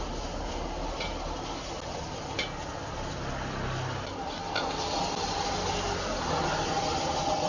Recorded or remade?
recorded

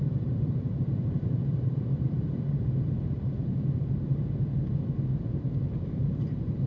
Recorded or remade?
remade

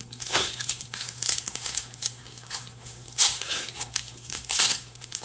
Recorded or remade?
remade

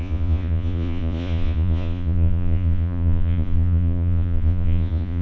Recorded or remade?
remade